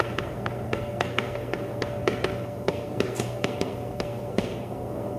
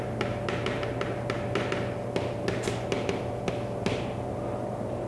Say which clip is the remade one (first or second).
first